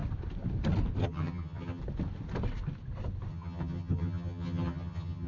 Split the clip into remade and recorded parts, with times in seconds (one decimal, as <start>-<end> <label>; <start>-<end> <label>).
0.0-1.0 recorded; 1.0-1.8 remade; 1.8-3.3 recorded; 3.3-5.3 remade